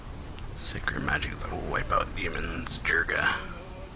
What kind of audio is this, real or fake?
fake